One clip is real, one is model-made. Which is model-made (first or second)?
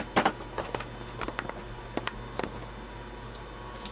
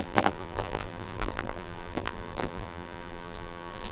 second